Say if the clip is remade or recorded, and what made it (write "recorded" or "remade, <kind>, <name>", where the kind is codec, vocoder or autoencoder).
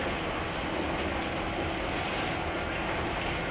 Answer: recorded